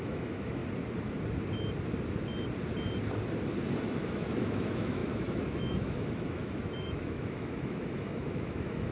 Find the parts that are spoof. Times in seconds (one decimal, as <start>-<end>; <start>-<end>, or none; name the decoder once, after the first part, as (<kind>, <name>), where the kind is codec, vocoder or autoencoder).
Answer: 0.0-0.6 (autoencoder, DAC-VAE); 3.8-8.9